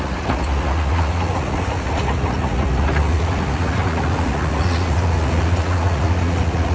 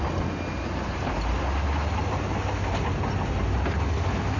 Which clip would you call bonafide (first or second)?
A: second